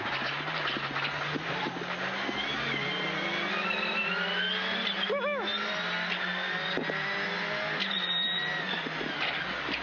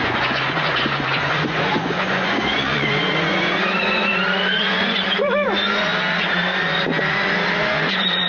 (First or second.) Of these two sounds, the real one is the first